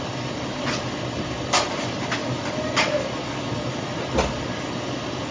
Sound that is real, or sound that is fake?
real